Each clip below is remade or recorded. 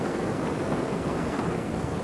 remade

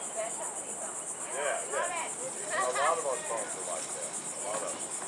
recorded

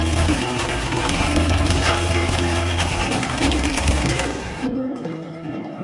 remade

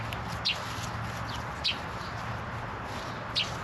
recorded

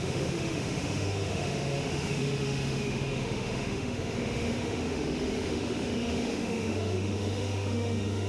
remade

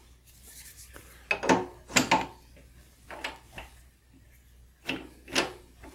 recorded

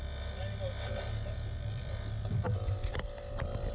recorded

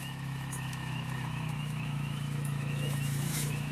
remade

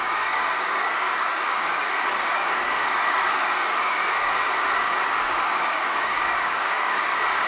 remade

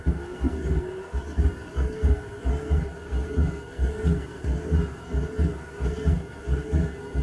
remade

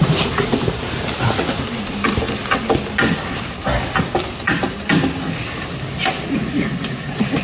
recorded